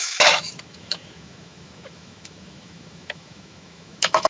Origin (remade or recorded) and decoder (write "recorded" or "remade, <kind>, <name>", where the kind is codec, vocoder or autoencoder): remade, autoencoder, DAC-VAE